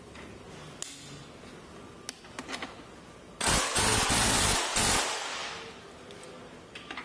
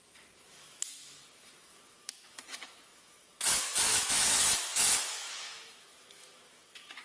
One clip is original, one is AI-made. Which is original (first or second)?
first